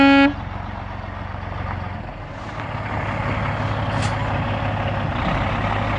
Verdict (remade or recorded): recorded